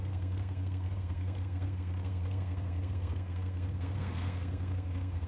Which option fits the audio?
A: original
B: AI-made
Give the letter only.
B